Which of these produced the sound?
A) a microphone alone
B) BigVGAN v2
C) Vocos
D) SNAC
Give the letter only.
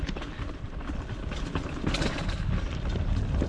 A